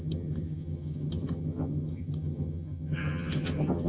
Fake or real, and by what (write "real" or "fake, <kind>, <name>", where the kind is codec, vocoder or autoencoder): fake, vocoder, HiFi-GAN